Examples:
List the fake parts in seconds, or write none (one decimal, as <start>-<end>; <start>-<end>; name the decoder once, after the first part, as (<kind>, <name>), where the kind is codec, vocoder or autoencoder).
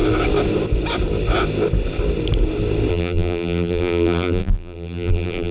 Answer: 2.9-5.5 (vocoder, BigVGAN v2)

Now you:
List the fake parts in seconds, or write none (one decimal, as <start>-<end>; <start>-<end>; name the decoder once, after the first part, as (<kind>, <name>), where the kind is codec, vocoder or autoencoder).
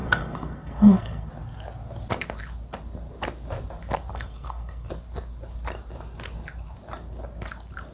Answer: 0.0-1.3 (codec, SNAC); 4.1-4.9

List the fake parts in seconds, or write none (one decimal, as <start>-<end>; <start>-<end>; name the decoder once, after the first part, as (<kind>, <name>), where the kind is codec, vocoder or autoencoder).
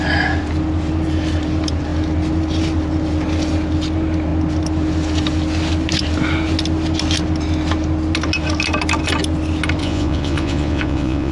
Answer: 9.8-11.3 (vocoder, Vocos)